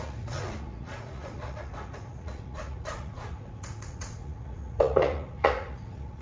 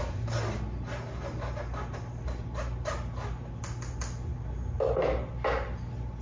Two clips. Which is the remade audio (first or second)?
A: first